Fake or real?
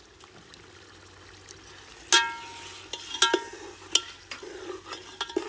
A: real